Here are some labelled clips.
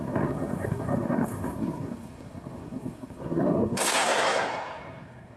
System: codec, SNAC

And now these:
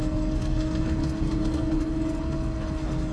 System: codec, SNAC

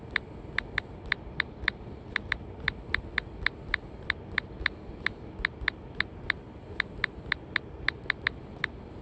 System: none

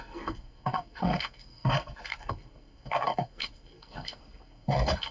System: codec, SNAC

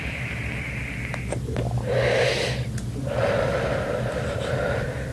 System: none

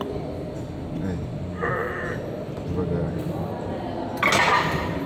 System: none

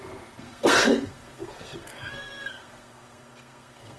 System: codec, SNAC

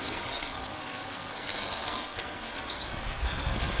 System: codec, SNAC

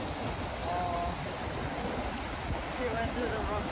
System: none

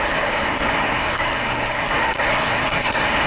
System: codec, SNAC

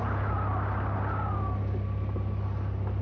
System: none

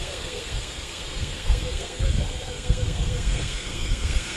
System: codec, SNAC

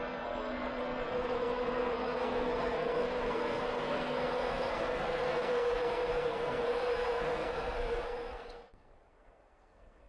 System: codec, SNAC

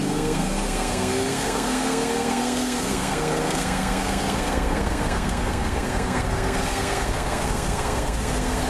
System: codec, SNAC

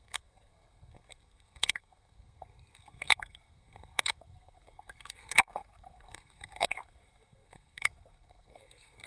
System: codec, SNAC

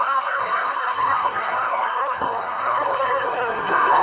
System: codec, SNAC